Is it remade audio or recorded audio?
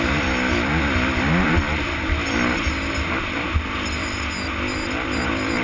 recorded